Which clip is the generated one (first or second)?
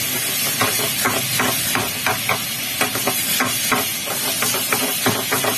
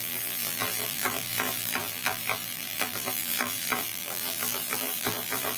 second